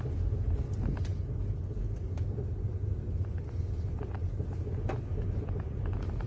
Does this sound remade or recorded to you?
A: recorded